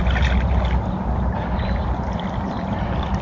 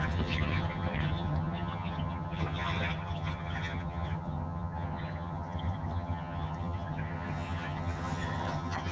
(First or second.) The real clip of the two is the first